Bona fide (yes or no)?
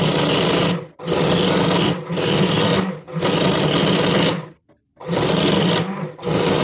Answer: yes